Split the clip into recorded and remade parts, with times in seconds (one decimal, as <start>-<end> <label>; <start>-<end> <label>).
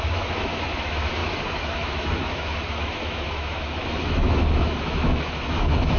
0.0-6.0 remade